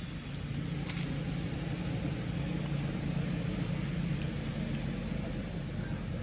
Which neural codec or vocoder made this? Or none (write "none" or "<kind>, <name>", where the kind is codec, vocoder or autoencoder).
none